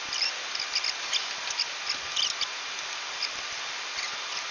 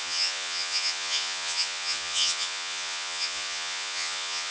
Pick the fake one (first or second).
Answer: second